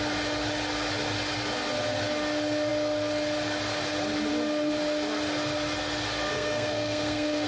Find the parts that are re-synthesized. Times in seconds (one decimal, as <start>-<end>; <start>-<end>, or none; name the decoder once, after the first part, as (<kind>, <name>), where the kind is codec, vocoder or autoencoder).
6.3-7.5 (codec, SNAC)